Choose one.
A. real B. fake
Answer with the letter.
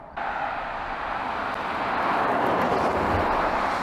A